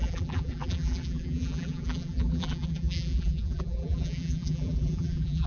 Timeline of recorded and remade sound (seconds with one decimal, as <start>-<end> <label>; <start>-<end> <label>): 0.0-5.5 remade